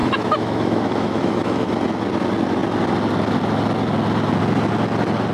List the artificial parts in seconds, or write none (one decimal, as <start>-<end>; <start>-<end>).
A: 0.0-1.7